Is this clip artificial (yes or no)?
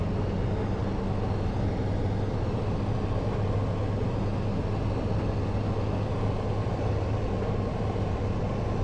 no